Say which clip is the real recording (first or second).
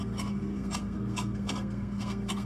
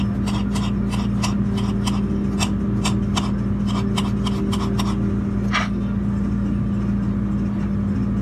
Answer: second